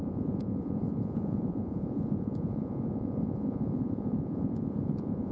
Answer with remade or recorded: remade